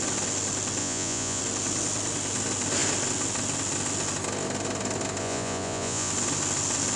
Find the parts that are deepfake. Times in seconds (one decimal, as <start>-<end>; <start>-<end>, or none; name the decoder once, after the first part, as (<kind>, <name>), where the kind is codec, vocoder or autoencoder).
0.8-1.4 (vocoder, Vocos); 5.2-6.1